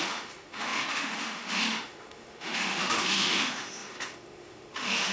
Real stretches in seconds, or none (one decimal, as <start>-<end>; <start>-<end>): none